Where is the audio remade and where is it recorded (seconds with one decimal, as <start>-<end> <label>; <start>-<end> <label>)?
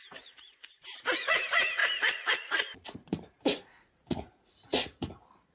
0.0-5.5 remade